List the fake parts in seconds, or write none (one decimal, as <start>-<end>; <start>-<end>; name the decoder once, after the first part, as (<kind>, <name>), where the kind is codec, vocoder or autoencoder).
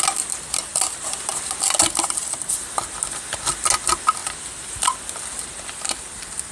none